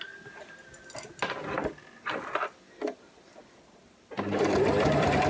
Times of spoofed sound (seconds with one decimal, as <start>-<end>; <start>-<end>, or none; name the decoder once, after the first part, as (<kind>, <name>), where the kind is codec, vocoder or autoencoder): 1.4-2.5 (vocoder, BigVGAN v2); 3.4-5.3